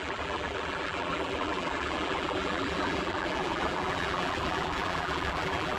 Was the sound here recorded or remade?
remade